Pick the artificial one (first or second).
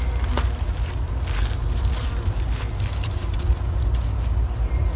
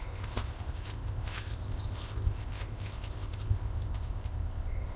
second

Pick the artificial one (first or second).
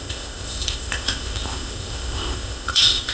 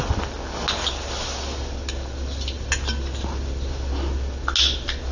first